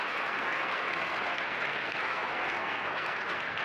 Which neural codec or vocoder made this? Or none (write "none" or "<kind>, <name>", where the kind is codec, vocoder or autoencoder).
codec, SNAC